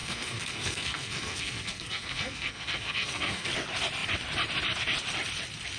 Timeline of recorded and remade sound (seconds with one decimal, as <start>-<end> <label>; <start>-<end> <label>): 0.0-3.5 remade; 3.5-5.8 recorded